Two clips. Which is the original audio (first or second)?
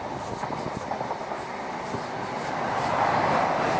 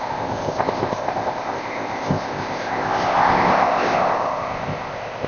first